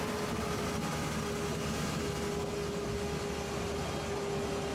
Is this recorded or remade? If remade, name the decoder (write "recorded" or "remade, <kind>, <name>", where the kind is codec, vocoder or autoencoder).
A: recorded